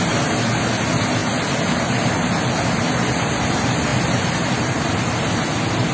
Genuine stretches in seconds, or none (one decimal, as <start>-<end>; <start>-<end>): 0.0-5.9